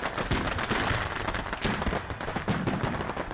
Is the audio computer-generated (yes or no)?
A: no